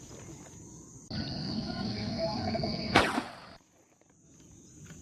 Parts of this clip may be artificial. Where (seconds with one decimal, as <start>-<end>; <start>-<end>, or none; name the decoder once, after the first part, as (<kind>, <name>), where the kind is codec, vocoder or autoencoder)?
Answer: 1.4-3.0 (codec, SNAC)